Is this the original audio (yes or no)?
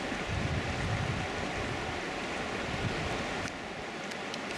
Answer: yes